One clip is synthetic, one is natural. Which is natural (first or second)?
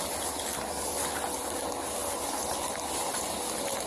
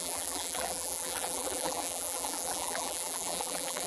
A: first